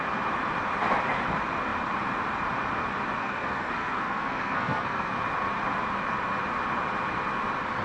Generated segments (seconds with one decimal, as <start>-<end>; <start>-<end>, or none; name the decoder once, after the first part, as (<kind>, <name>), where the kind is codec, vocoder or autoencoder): 3.2-5.1 (codec, SNAC)